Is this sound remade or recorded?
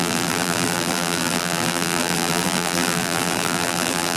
remade